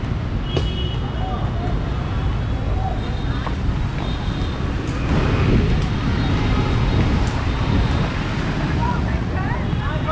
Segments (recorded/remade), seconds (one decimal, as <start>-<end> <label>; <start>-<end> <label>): 0.0-8.8 recorded; 8.8-9.3 remade; 9.3-10.1 recorded